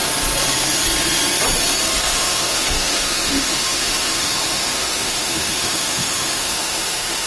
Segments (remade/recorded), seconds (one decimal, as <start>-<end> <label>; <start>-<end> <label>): 0.0-2.0 recorded; 2.0-7.3 remade